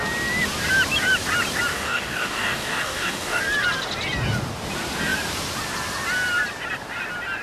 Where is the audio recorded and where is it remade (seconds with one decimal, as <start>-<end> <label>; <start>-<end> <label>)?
0.0-1.7 recorded; 1.7-3.4 remade; 3.4-7.4 recorded